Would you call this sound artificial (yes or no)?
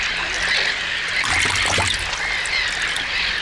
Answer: no